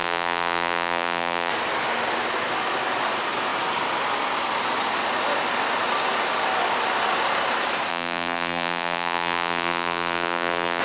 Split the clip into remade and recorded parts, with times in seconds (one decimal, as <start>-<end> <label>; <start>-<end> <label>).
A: 0.0-1.5 remade; 1.5-7.9 recorded; 7.9-10.8 remade